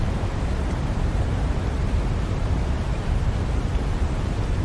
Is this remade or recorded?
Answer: remade